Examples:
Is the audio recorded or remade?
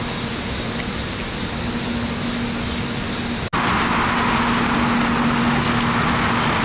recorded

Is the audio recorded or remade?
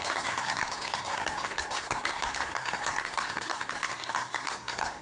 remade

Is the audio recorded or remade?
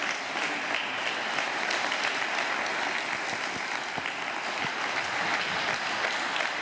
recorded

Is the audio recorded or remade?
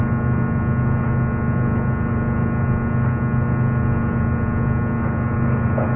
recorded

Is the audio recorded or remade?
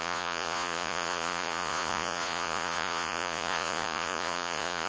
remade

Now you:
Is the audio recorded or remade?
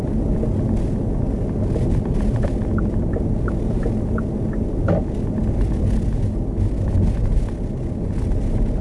recorded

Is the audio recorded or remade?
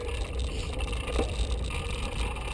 recorded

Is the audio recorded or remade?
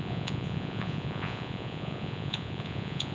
remade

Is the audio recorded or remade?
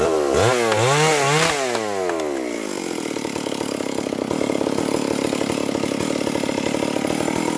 recorded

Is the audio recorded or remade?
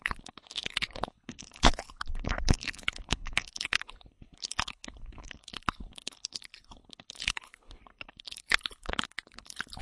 remade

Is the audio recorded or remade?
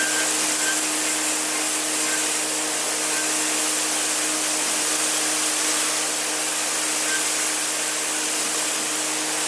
recorded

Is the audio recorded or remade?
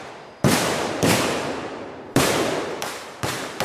recorded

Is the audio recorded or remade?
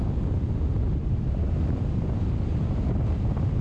recorded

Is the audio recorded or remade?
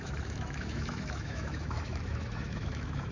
remade